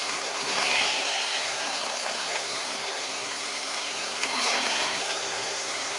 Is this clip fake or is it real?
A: fake